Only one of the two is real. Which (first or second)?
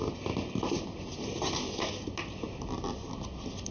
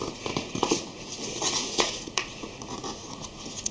first